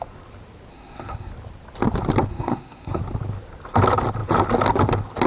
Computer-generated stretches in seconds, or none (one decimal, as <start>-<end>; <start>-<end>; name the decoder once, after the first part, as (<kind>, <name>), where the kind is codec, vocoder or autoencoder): 0.7-1.3 (codec, SNAC); 2.3-3.0